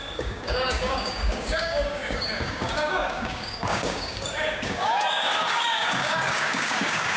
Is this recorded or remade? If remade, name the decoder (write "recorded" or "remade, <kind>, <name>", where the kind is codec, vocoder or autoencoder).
remade, codec, DAC